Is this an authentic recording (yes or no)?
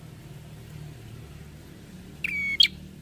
yes